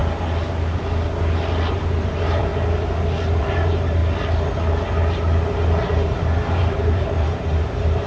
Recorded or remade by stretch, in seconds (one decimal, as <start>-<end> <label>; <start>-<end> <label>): 0.0-1.7 recorded; 1.7-2.5 remade; 2.5-3.4 recorded; 3.4-4.0 remade; 4.0-6.5 recorded; 6.5-8.1 remade